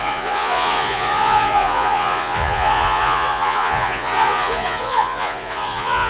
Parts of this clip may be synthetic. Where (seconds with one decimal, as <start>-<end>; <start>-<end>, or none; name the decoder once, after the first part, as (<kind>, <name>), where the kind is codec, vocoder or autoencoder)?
0.0-6.1 (vocoder, Vocos)